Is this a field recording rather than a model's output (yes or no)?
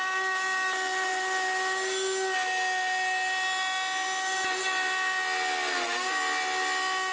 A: yes